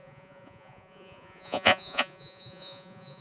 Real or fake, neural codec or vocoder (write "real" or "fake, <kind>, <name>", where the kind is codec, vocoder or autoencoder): fake, vocoder, Vocos